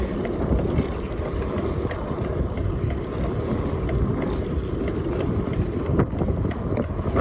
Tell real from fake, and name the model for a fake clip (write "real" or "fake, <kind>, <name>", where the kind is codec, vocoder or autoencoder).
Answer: fake, vocoder, BigVGAN v2